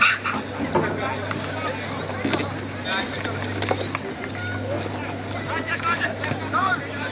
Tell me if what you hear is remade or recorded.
recorded